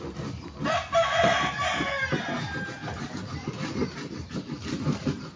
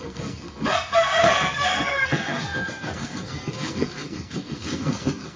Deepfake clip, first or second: second